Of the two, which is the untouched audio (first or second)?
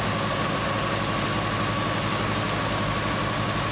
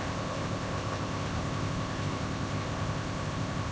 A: first